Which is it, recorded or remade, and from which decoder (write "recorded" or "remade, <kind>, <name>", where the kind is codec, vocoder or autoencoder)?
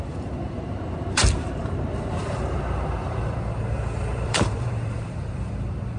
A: remade, vocoder, BigVGAN v2